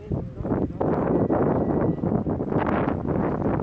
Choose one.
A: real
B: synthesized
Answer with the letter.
A